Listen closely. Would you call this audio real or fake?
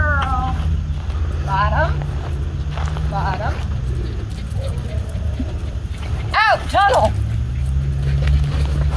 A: real